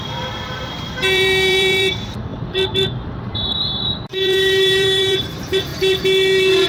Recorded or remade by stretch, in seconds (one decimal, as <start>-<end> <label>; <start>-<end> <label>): 0.0-5.7 remade; 5.7-6.7 recorded